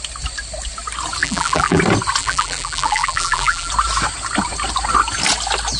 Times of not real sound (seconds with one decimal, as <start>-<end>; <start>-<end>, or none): 1.2-1.8; 2.2-3.7